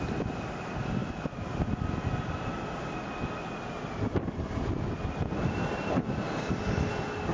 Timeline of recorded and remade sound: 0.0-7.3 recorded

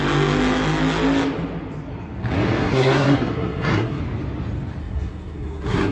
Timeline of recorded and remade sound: 0.0-2.6 recorded; 2.6-4.0 remade; 4.0-4.8 recorded; 4.8-5.9 remade

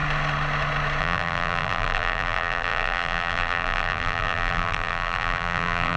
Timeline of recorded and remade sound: 0.0-1.0 recorded; 1.0-6.0 remade

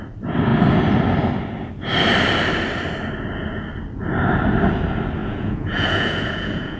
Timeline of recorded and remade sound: 0.0-5.2 recorded; 5.2-6.8 remade

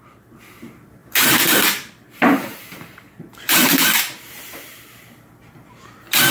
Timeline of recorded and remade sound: 0.0-6.3 remade